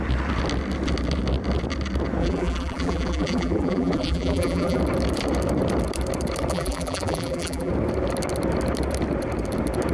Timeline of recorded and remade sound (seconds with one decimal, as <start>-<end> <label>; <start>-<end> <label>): 0.0-2.2 recorded; 2.2-4.8 remade; 4.8-6.5 recorded; 6.5-7.7 remade; 7.7-9.9 recorded